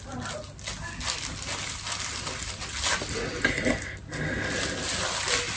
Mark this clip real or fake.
real